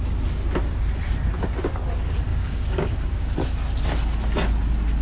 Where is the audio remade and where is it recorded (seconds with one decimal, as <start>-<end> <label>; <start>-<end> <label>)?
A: 0.0-2.3 recorded; 2.3-3.3 remade; 3.3-5.0 recorded